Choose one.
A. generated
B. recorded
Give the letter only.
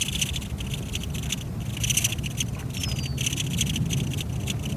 B